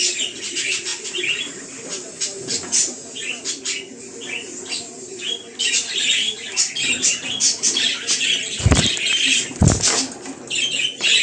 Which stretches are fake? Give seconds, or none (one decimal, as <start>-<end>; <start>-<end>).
none